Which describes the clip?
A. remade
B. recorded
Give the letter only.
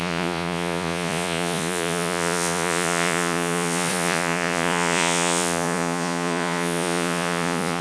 A